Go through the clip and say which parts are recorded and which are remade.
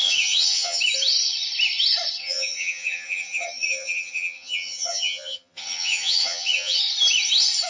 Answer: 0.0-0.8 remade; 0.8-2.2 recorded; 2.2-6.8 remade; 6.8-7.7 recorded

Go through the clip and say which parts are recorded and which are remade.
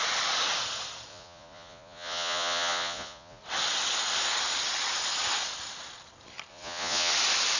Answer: 0.0-1.1 recorded; 1.1-3.4 remade; 3.4-6.5 recorded; 6.5-7.1 remade; 7.1-7.6 recorded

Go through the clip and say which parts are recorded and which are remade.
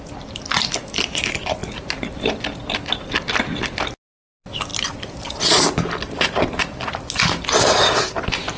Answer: 0.0-8.6 recorded